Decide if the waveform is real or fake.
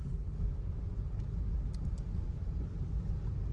real